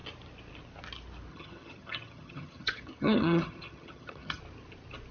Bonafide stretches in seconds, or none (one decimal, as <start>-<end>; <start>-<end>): 0.0-1.3; 4.4-5.1